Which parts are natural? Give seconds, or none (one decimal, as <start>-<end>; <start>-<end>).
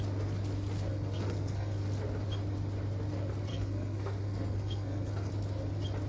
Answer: 0.0-0.9; 1.9-3.5; 5.3-6.1